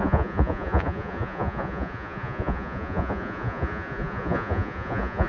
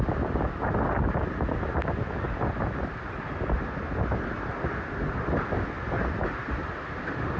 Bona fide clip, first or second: second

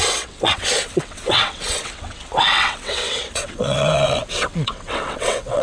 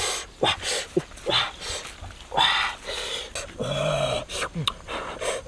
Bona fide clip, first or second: second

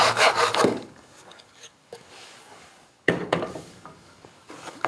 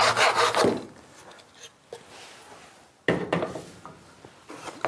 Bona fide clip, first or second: second